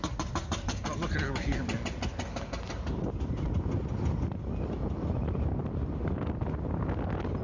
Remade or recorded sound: recorded